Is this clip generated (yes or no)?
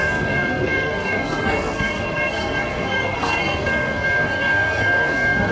yes